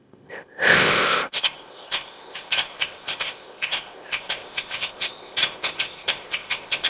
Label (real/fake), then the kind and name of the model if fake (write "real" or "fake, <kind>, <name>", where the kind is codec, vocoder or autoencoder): fake, codec, ZipCodec